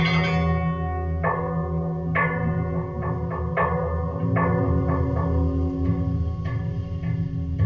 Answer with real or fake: real